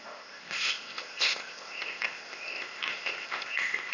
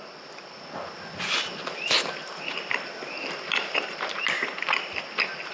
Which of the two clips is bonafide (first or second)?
second